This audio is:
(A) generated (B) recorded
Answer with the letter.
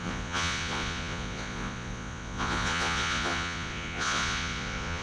A